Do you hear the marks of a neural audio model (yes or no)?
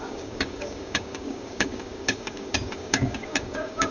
yes